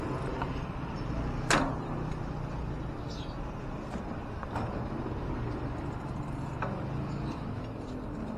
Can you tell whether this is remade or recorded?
recorded